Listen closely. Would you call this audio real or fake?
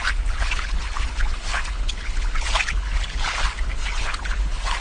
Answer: fake